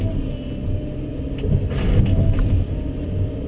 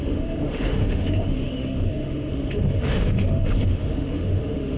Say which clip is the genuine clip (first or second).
first